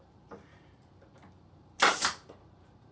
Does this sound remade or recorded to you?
remade